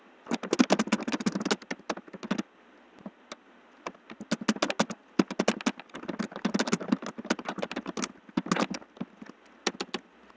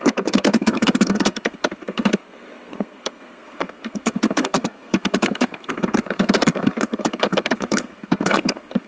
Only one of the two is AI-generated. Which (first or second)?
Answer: second